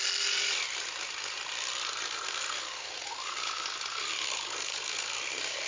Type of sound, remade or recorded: recorded